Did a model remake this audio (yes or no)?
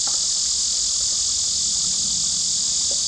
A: no